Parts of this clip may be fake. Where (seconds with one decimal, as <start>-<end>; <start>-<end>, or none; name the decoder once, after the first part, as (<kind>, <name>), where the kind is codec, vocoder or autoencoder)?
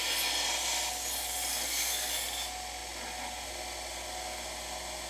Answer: 1.5-2.1 (codec, SNAC)